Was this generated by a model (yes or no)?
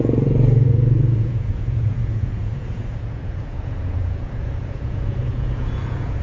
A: yes